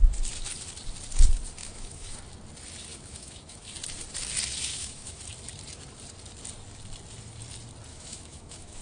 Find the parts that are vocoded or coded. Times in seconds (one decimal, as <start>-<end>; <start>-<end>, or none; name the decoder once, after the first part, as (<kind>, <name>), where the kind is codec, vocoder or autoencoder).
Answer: 1.6-2.2 (autoencoder, DAC-VAE); 2.9-3.7; 4.7-5.2; 7.9-8.8